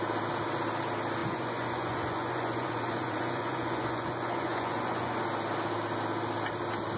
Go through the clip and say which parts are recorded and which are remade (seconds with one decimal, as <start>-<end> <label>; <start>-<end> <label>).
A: 0.0-1.2 recorded; 1.2-5.2 remade; 5.2-7.0 recorded